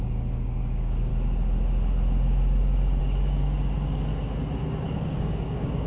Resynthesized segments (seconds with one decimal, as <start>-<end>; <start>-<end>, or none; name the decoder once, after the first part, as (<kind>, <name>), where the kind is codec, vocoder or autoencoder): 0.0-1.1 (codec, DAC); 3.0-4.1; 4.8-5.9